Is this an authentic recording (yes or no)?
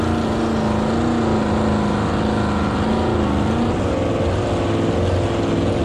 yes